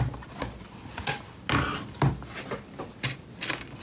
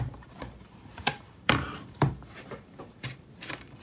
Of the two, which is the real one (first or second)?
first